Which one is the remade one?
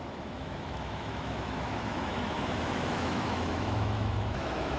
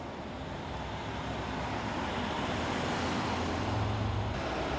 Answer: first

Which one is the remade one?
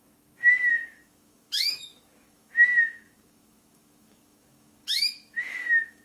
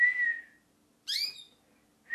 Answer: first